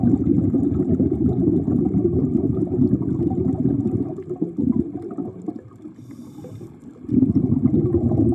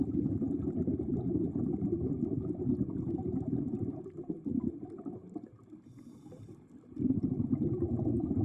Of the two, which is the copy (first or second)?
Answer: second